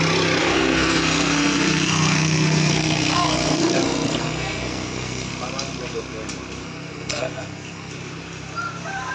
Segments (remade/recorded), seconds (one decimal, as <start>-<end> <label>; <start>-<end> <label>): 0.0-0.4 recorded; 0.4-5.3 remade; 5.3-6.6 recorded; 6.6-7.9 remade; 7.9-9.1 recorded